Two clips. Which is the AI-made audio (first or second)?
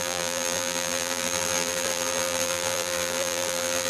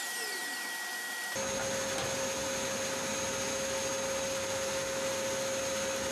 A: first